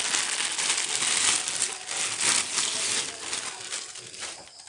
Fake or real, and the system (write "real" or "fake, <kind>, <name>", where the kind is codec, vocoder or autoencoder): real